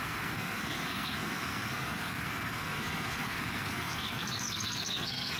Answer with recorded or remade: remade